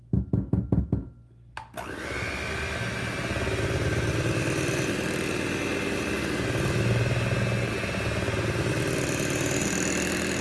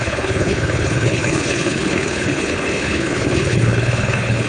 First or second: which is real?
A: first